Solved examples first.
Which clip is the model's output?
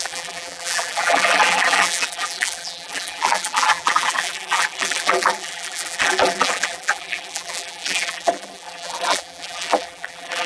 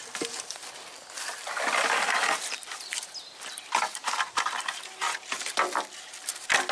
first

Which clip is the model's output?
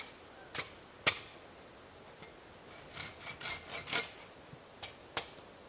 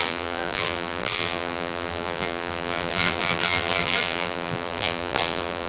second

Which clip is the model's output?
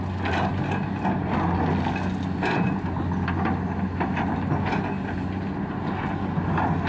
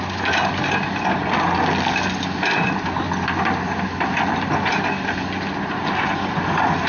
second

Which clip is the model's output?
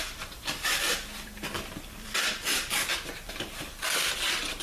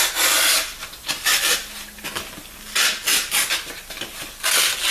first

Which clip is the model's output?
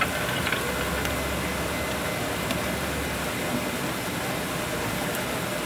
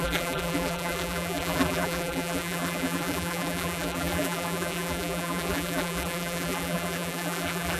second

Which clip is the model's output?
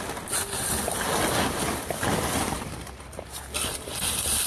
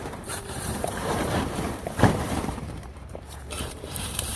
second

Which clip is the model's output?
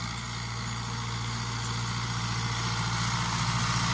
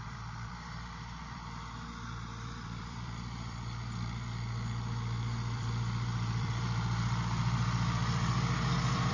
second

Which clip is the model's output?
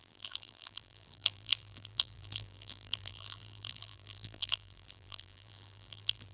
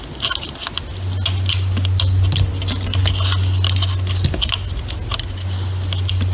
first